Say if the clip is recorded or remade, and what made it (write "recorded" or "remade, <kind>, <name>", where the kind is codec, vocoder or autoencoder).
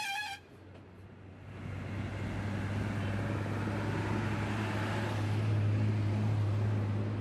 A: recorded